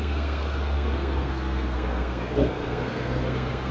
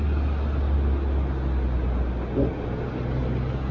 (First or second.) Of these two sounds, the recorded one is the second